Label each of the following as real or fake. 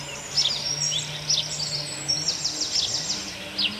real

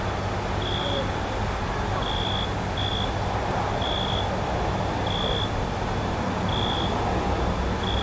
real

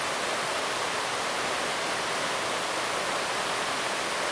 real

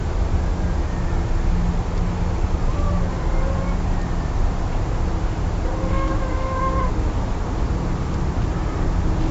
real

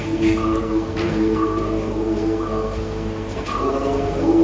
fake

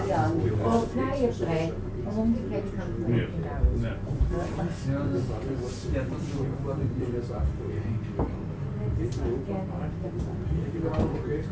real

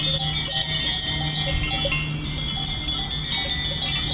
real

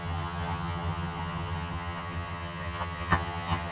fake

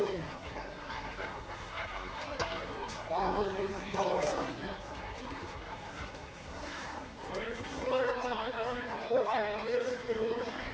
fake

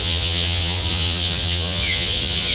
fake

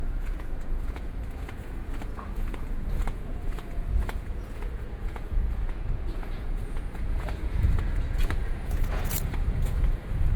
fake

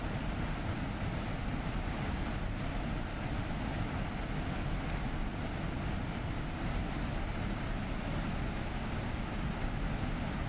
real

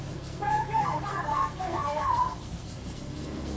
fake